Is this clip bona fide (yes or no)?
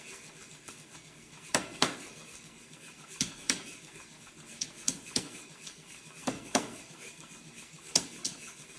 no